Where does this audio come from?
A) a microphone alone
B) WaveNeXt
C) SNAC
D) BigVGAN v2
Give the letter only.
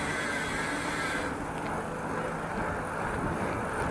A